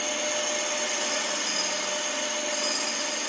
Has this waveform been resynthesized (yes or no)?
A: no